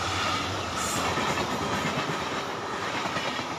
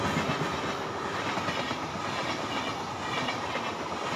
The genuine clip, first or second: second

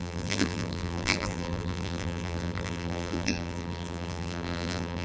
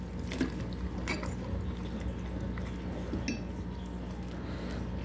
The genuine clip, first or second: second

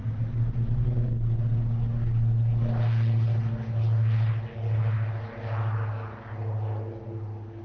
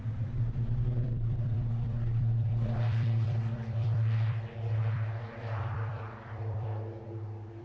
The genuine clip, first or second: first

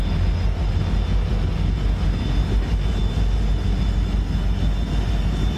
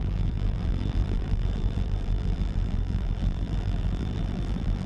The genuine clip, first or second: first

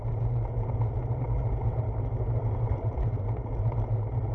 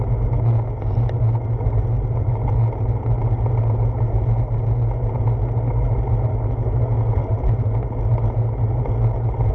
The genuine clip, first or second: second